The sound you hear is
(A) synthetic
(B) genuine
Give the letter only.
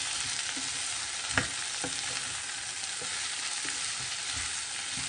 B